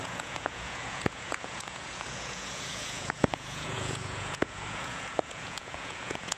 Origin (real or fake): fake